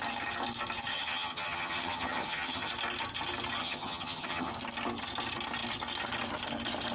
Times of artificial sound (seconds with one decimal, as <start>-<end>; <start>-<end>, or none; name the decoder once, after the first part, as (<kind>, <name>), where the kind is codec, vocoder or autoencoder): 0.9-2.7 (vocoder, HiFi-GAN); 3.6-4.5

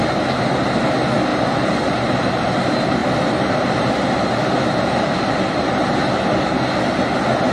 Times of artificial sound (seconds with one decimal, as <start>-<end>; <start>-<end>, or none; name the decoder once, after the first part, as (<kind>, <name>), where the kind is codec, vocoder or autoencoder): 1.3-2.5 (vocoder, BigVGAN v2); 3.0-6.0

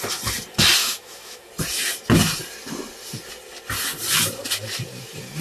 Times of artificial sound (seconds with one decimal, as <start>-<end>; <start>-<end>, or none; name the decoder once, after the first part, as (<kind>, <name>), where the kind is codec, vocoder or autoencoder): 0.8-1.5 (autoencoder, DAC-VAE)

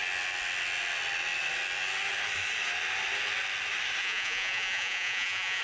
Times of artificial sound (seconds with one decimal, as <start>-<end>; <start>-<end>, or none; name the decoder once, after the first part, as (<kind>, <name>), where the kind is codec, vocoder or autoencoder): 4.0-5.6 (vocoder, Vocos)

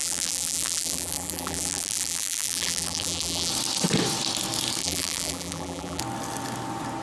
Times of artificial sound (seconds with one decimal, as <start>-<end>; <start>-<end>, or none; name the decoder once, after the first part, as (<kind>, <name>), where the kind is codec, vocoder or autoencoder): 0.0-3.5 (vocoder, BigVGAN v2); 4.8-6.0

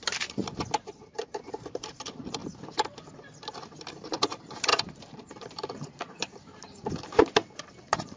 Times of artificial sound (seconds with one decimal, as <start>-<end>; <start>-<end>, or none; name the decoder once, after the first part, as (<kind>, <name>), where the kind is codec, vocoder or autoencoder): 0.0-0.4 (vocoder, BigVGAN v2); 1.1-2.4; 3.9-8.2